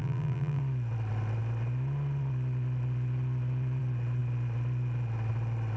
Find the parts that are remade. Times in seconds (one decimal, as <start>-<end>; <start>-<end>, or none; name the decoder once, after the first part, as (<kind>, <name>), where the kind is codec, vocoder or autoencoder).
0.0-0.6 (vocoder, BigVGAN v2)

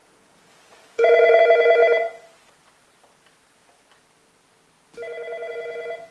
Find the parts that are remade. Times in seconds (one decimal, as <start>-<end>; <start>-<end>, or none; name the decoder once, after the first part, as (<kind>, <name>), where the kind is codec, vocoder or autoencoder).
0.0-1.4 (vocoder, Vocos)

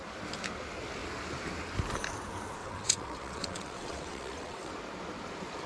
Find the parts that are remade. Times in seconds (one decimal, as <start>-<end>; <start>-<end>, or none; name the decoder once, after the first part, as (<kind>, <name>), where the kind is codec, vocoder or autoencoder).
2.6-4.7 (vocoder, WaveNeXt)

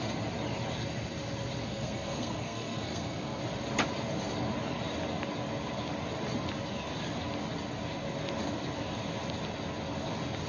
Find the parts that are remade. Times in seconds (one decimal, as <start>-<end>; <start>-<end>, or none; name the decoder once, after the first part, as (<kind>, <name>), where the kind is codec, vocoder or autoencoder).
1.6-3.4 (codec, SNAC)

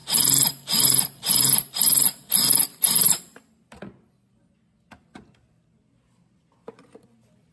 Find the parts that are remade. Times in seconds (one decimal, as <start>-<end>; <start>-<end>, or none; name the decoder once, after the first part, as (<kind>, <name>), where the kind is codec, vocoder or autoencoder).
none

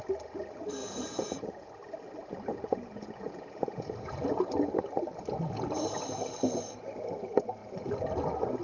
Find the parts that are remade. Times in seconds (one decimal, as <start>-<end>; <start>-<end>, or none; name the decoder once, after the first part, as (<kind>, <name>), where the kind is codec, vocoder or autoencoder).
0.8-1.7 (vocoder, Vocos); 2.5-4.2

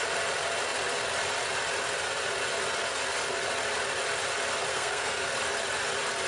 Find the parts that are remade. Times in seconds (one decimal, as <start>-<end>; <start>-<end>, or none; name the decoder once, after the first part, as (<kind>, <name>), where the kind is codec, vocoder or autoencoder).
4.7-5.2 (codec, SNAC)